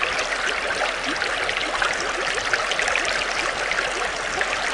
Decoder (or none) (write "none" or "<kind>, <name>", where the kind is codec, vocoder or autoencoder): none